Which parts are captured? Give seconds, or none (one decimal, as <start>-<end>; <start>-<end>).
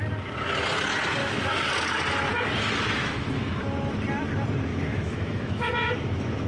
0.0-1.2; 1.7-3.0; 3.6-4.7